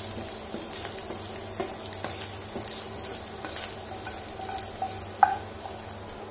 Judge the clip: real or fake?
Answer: real